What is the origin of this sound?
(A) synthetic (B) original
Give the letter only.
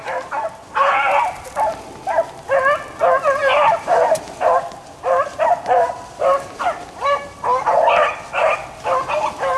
B